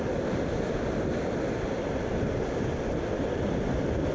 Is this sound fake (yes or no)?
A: no